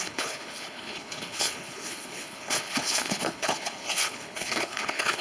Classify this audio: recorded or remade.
remade